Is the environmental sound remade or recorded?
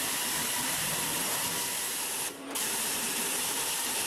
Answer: remade